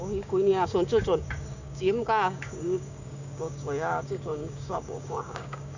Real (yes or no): no